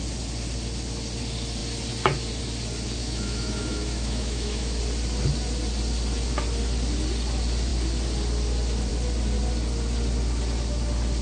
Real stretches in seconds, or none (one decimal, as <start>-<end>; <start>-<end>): 0.0-3.0; 4.8-11.2